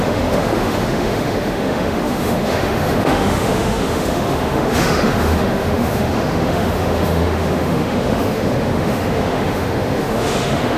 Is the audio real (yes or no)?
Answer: no